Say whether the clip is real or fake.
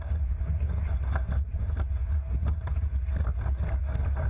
real